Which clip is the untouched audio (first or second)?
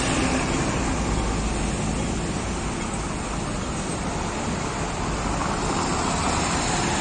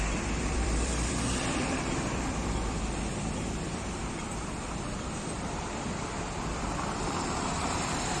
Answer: first